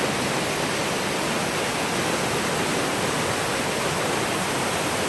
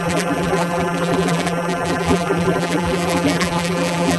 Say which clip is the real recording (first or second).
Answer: first